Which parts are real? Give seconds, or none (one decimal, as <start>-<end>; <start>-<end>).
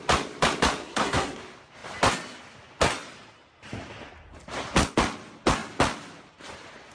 0.0-0.8; 1.4-6.9